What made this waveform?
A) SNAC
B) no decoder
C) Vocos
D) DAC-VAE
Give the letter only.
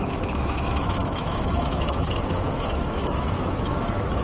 D